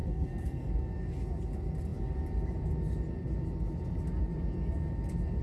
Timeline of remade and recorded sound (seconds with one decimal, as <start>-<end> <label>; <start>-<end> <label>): 0.0-0.7 remade; 0.7-5.4 recorded

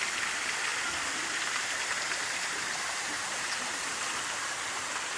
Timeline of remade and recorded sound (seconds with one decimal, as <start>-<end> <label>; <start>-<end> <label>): 0.0-5.2 remade

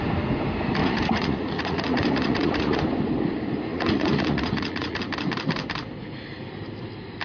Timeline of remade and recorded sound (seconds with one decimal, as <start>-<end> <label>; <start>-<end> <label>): 0.0-0.8 recorded; 0.8-2.8 remade; 2.8-3.7 recorded; 3.7-5.0 remade; 5.0-7.2 recorded